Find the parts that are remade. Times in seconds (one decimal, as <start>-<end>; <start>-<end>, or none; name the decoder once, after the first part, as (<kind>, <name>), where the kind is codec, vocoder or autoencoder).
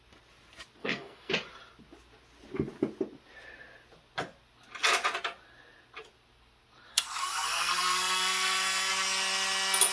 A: 0.8-1.3 (codec, SNAC); 6.9-8.9